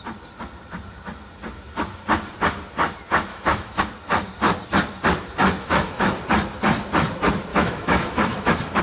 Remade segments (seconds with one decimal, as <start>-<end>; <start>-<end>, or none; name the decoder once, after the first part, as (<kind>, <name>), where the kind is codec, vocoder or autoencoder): 3.3-3.8 (autoencoder, DAC-VAE); 5.4-6.2; 7.5-8.8